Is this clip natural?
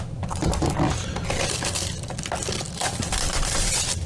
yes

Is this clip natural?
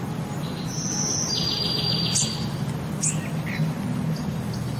yes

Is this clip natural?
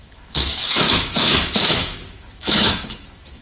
no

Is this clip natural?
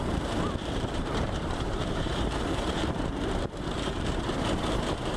no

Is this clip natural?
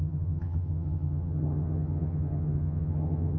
no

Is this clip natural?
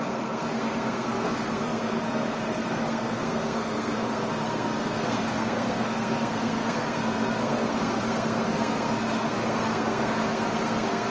no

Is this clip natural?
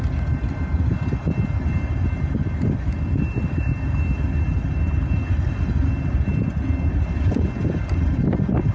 yes